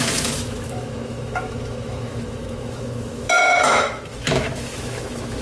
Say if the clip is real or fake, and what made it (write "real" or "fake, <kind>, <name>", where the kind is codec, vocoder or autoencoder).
fake, autoencoder, DAC-VAE